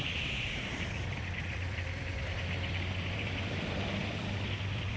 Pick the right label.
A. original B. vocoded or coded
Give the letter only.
B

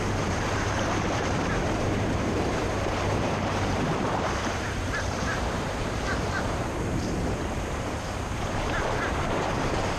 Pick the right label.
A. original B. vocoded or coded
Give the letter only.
B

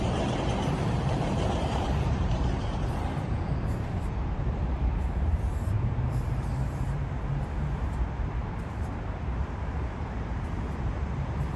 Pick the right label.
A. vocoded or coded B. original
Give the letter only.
A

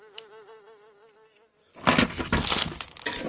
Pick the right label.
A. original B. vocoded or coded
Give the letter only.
A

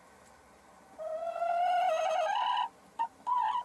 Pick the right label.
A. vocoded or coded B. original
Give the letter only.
B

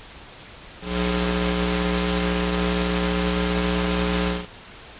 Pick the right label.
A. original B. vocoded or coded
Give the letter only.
A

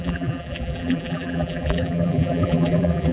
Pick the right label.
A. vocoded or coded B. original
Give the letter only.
A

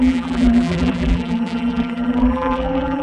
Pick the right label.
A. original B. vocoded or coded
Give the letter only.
B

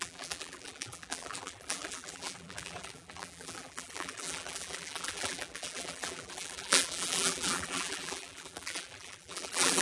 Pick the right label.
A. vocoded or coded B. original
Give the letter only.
A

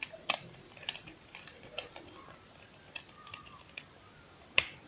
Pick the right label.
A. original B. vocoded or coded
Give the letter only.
B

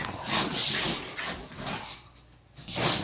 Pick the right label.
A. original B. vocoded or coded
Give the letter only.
B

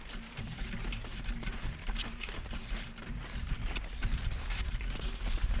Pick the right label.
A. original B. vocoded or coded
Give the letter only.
B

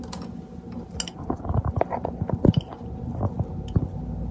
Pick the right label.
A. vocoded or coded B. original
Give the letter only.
B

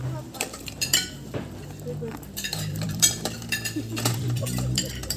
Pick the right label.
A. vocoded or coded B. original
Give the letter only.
A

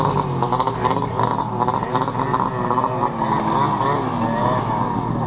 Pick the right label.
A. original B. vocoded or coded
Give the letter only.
A